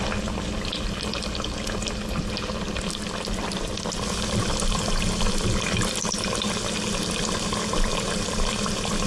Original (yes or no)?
yes